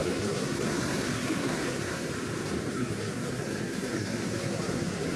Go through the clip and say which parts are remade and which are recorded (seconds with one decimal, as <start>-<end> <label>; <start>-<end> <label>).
0.0-2.1 remade; 2.1-2.7 recorded; 2.7-5.2 remade